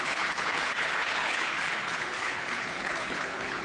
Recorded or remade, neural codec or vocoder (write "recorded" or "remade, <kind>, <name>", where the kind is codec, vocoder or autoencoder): remade, codec, HILCodec